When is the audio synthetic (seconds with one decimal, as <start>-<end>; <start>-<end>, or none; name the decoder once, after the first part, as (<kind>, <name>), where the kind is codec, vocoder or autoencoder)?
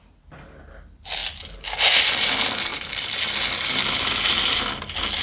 2.7-4.6 (vocoder, BigVGAN v2)